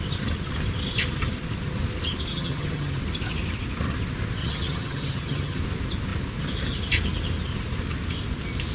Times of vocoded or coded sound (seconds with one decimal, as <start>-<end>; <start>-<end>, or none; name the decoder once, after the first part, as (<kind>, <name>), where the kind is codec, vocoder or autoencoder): 2.3-3.0 (vocoder, HiFi-GAN); 4.4-5.6